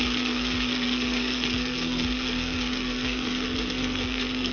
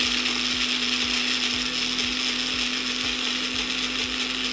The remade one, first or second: first